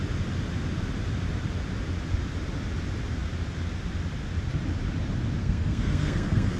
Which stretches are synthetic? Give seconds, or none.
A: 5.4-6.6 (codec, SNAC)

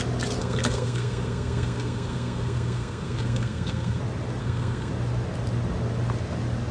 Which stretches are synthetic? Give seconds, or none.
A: 0.4-4.0 (codec, SNAC); 4.4-4.9

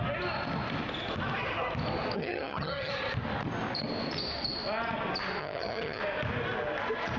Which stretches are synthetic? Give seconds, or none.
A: 2.2-2.9 (vocoder, HiFi-GAN); 5.4-6.0

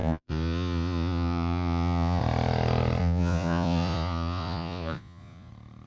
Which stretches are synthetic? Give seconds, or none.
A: 0.0-2.2 (vocoder, Vocos); 3.0-5.5

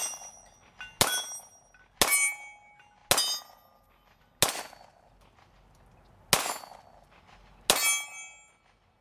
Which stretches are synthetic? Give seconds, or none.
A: none

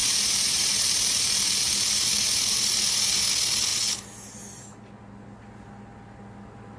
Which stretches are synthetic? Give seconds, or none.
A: 0.0-3.3 (vocoder, BigVGAN v2)

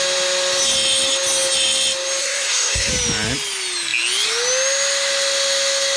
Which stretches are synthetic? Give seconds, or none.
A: 2.2-2.9 (codec, SNAC)